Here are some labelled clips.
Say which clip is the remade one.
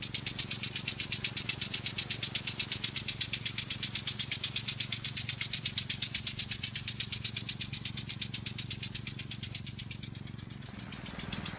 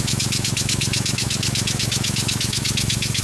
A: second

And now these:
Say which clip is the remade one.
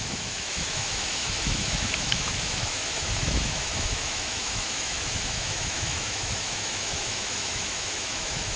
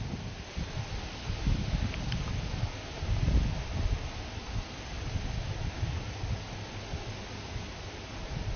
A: first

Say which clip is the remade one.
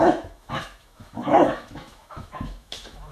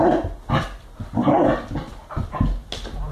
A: first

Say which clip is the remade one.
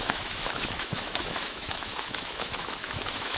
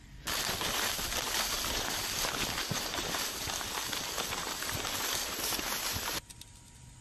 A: first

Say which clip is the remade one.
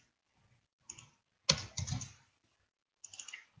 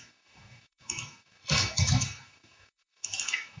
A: second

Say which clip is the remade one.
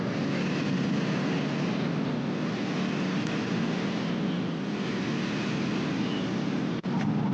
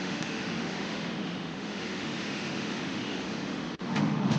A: second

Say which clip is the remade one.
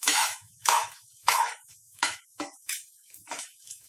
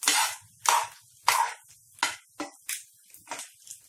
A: first